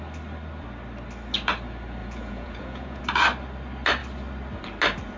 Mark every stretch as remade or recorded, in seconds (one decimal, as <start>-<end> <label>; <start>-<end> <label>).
0.0-2.0 recorded; 2.0-3.0 remade; 3.0-5.2 recorded